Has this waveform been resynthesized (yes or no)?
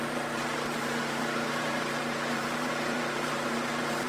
yes